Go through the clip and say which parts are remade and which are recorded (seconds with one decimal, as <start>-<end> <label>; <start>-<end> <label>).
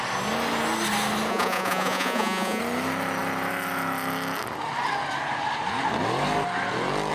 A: 0.0-1.3 recorded; 1.3-2.6 remade; 2.6-7.1 recorded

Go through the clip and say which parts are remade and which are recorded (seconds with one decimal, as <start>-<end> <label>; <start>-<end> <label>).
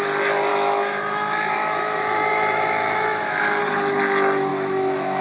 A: 0.0-0.5 recorded; 0.5-3.6 remade; 3.6-4.5 recorded; 4.5-5.2 remade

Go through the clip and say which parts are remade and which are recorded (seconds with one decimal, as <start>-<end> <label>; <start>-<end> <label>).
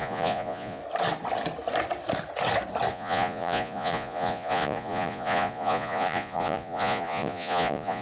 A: 0.0-0.8 remade; 0.8-2.9 recorded; 2.9-8.0 remade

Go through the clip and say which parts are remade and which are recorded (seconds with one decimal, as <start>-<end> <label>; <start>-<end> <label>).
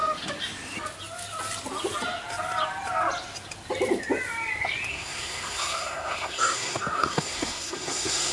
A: 0.0-4.9 recorded; 4.9-8.3 remade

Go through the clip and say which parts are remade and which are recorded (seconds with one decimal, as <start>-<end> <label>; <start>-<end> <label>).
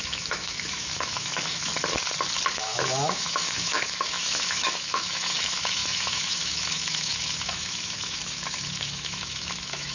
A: 0.0-1.7 remade; 1.7-2.5 recorded; 2.5-9.9 remade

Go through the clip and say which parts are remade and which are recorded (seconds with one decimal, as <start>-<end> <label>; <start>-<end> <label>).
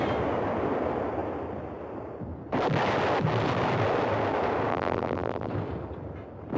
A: 0.0-4.7 recorded; 4.7-5.5 remade; 5.5-6.6 recorded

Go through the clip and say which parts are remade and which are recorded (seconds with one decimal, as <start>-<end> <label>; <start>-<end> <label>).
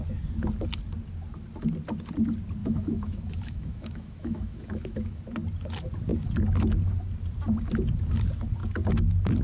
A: 0.0-2.6 recorded; 2.6-5.2 remade; 5.2-9.4 recorded